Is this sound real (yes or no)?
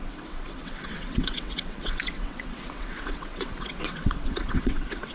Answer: no